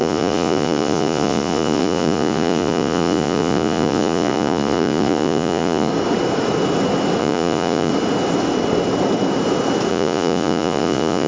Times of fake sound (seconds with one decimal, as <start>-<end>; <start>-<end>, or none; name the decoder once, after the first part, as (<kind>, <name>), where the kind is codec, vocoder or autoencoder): 0.0-5.9 (vocoder, Vocos); 7.2-7.9; 9.9-11.3